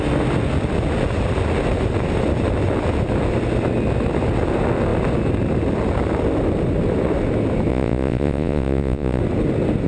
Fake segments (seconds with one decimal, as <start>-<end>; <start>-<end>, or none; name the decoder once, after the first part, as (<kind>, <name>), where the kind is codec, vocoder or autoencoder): 7.7-9.2 (vocoder, Vocos)